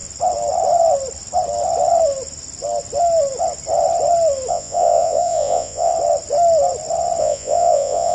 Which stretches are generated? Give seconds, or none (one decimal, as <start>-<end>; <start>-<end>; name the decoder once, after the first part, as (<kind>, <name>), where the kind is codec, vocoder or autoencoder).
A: 4.5-5.9 (vocoder, Vocos); 7.2-8.1